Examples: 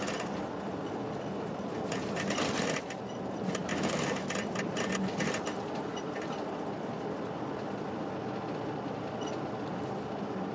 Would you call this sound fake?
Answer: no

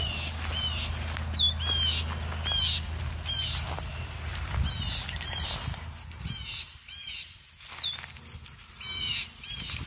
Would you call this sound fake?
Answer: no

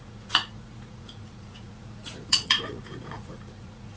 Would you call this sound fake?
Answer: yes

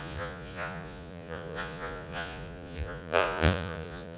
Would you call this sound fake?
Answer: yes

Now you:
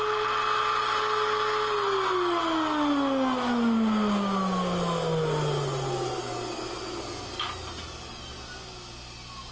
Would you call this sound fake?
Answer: no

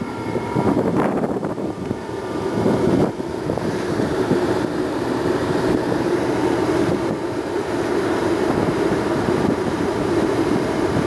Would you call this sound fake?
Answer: yes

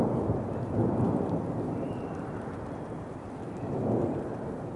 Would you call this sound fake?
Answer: yes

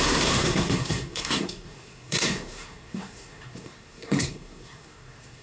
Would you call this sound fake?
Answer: yes